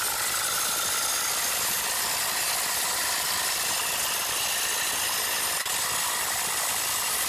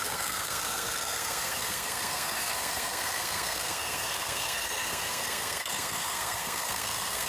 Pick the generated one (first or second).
second